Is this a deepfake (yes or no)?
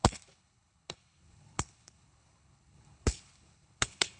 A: yes